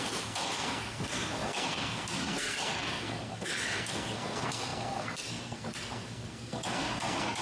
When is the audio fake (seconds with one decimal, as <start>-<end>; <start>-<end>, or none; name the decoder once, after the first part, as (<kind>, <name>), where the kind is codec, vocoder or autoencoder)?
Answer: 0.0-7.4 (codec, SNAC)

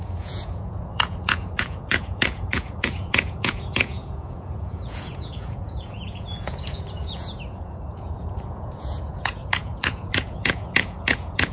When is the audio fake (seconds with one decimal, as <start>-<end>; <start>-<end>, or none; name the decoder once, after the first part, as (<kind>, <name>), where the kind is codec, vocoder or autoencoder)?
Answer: 0.0-11.5 (vocoder, Vocos)

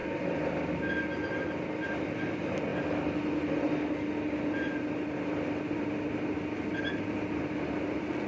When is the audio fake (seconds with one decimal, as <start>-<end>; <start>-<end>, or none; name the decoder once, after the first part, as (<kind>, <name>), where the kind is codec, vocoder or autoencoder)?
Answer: none